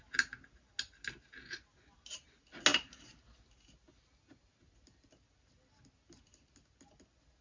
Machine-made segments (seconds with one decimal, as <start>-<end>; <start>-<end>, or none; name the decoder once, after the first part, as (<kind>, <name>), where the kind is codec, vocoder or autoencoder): none